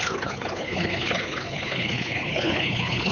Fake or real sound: fake